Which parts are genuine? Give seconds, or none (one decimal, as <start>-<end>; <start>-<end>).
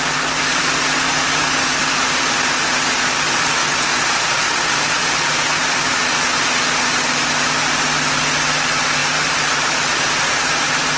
0.0-1.8; 2.9-9.0; 10.2-11.0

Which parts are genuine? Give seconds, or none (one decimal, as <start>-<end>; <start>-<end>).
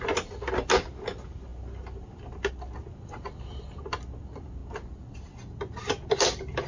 0.0-6.7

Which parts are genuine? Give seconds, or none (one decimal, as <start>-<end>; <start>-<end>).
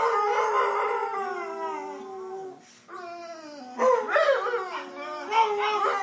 0.0-6.0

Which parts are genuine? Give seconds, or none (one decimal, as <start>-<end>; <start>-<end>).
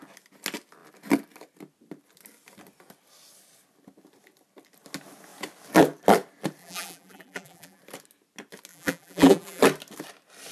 0.0-6.6; 7.8-8.7; 9.6-10.5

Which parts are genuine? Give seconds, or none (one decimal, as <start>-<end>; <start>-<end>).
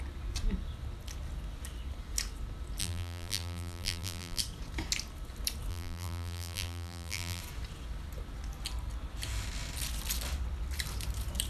0.0-2.8; 4.4-5.7; 7.4-11.5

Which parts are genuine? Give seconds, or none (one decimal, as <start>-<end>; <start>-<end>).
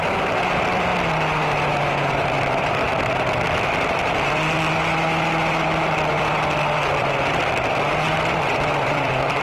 0.9-2.1; 2.9-6.1; 7.4-8.3